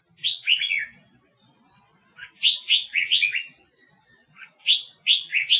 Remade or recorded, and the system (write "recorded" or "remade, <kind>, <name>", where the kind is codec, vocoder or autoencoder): remade, vocoder, Vocos